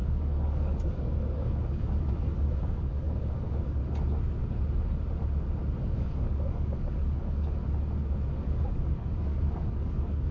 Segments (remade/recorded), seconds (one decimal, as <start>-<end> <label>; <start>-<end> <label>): 0.0-3.8 remade; 3.8-5.8 recorded; 5.8-7.6 remade; 7.6-8.3 recorded; 8.3-10.3 remade